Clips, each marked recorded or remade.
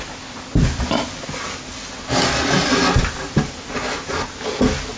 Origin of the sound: recorded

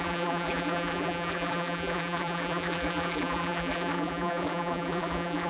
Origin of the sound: remade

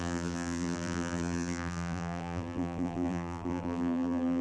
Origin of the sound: remade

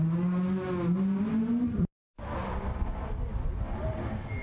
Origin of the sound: recorded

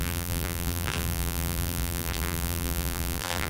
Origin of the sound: remade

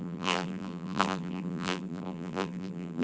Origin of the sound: remade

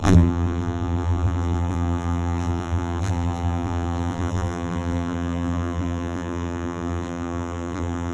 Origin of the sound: remade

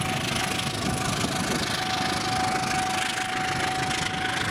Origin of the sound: recorded